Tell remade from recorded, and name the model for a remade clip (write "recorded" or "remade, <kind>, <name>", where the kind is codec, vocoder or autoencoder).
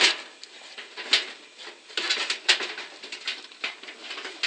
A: recorded